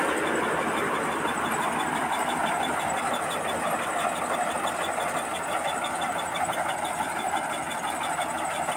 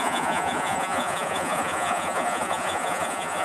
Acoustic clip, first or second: first